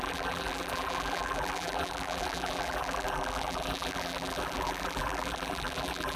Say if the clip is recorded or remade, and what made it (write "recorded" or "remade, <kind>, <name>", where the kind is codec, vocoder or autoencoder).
remade, vocoder, BigVGAN v2